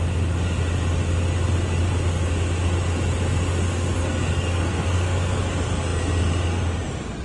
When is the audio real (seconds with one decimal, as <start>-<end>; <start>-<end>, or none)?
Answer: 0.0-4.0; 5.4-7.2